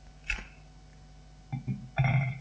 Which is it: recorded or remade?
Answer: recorded